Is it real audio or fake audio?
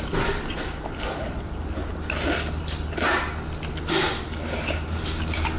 real